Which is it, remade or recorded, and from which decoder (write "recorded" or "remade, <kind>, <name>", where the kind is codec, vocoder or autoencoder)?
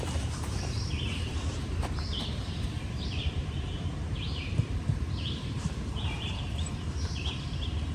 remade, vocoder, BigVGAN v2